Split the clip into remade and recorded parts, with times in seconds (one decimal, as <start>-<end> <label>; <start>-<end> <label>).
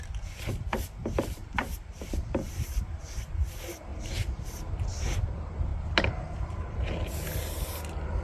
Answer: 0.0-1.0 recorded; 1.0-2.5 remade; 2.5-3.9 recorded; 3.9-4.5 remade; 4.5-8.2 recorded